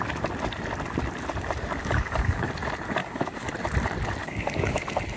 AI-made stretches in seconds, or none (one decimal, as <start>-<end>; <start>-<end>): 1.8-2.5; 3.0-3.5; 4.2-4.8